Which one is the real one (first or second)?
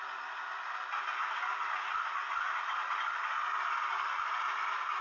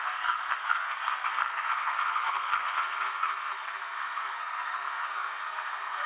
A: first